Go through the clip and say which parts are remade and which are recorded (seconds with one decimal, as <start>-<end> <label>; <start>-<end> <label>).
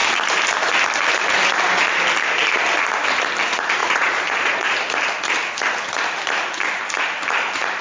0.0-3.8 recorded; 3.8-4.7 remade; 4.7-7.8 recorded